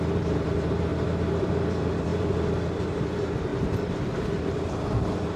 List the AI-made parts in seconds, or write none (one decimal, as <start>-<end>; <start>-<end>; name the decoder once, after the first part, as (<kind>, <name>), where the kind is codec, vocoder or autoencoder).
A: 0.0-0.9 (vocoder, BigVGAN v2); 1.4-5.4